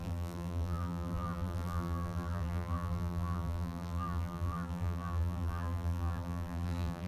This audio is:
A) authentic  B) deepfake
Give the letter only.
B